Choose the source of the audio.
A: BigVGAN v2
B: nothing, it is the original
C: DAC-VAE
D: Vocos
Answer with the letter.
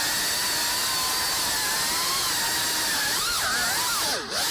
B